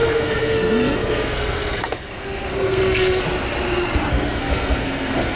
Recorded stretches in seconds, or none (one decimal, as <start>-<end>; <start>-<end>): 3.2-4.1